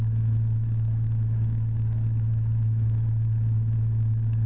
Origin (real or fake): fake